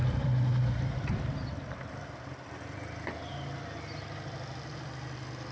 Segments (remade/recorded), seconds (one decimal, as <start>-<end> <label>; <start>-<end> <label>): 0.0-3.3 remade; 3.3-5.5 recorded